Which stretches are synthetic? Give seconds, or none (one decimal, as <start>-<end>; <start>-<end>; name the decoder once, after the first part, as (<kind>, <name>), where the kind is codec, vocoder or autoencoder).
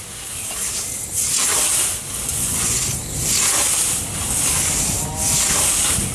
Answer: 2.3-2.8 (vocoder, Vocos)